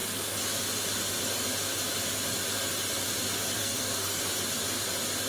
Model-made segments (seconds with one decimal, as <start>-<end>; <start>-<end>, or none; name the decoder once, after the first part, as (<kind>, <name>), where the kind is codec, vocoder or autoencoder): 3.6-4.2 (codec, SNAC)